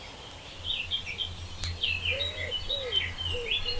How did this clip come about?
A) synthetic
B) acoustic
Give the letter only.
B